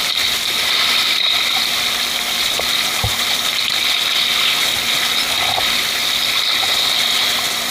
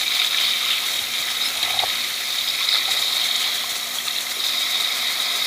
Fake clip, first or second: second